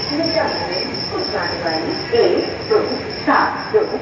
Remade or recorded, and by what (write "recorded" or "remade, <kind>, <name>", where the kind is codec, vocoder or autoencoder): recorded